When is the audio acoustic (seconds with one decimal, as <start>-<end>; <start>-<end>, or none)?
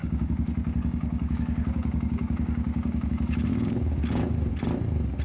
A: 3.1-3.5; 4.5-5.2